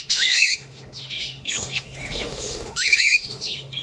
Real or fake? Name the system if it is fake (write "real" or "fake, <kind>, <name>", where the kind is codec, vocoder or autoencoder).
fake, autoencoder, DAC-VAE